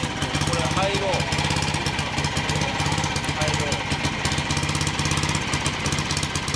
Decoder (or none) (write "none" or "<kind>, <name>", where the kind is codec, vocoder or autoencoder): none